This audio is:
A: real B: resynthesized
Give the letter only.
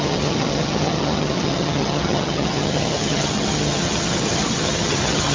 B